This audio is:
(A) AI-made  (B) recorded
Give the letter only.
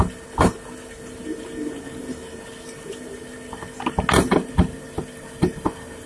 B